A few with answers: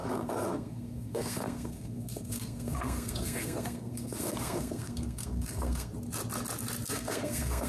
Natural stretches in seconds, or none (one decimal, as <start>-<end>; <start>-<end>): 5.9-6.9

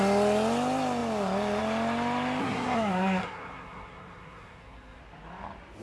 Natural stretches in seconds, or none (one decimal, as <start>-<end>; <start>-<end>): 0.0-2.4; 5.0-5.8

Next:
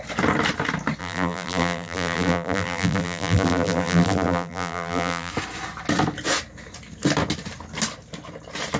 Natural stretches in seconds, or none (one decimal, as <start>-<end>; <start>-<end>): 0.0-1.0; 5.3-8.8

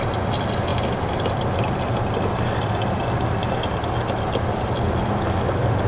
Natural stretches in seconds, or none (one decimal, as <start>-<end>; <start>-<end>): 0.0-5.9